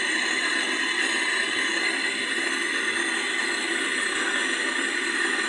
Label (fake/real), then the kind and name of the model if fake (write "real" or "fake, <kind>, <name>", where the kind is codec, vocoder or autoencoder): real